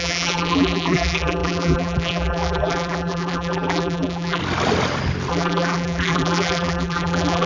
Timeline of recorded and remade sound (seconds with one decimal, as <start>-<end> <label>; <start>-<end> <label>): 0.0-4.4 remade; 4.4-5.3 recorded; 5.3-7.5 remade